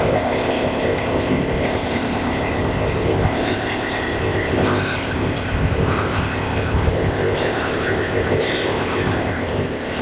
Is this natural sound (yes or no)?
no